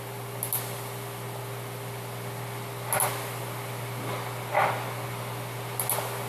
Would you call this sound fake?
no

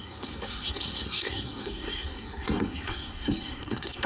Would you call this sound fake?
yes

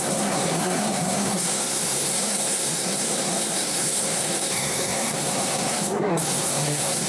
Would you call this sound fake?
yes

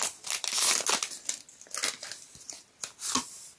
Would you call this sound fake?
no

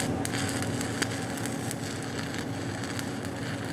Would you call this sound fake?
no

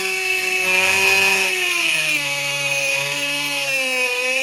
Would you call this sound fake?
yes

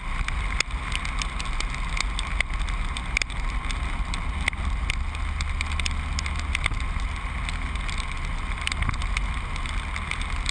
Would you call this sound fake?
no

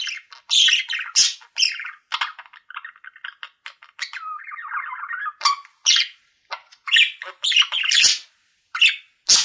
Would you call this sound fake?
no